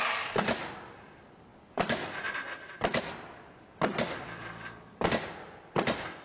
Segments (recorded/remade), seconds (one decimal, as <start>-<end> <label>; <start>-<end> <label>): 0.0-6.2 recorded